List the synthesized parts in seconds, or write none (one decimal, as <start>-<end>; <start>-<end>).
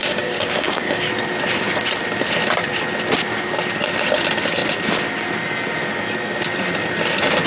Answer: 0.0-1.1